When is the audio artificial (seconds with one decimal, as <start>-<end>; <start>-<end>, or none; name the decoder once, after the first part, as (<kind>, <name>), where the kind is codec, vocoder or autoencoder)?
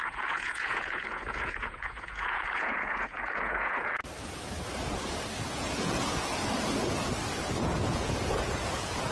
0.0-4.0 (vocoder, Vocos); 5.5-6.3; 7.5-9.1